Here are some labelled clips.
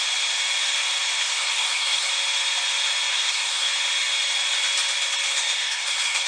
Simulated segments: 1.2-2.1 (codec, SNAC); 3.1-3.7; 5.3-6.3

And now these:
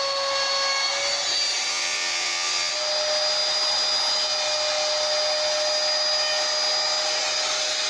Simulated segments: 1.7-2.7 (vocoder, WaveNeXt)